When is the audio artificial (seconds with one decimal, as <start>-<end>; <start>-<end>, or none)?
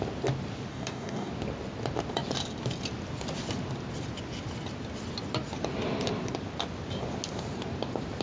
0.7-1.3